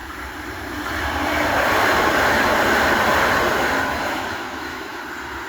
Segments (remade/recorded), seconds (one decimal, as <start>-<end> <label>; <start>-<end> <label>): 0.0-4.0 recorded; 4.0-5.0 remade; 5.0-5.5 recorded